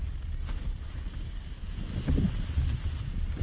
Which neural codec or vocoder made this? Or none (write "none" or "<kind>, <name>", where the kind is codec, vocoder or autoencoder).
none